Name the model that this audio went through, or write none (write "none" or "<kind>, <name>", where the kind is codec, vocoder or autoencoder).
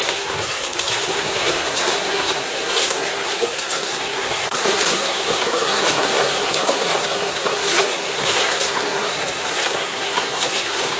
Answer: codec, SNAC